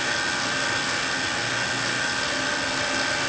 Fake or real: real